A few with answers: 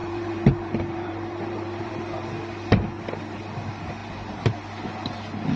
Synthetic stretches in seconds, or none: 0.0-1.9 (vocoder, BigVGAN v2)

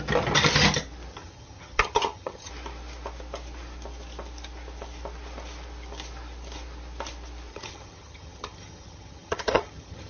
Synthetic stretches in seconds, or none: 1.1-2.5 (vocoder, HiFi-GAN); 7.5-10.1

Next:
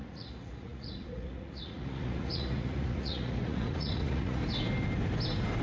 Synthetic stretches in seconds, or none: 0.0-4.4 (vocoder, Vocos)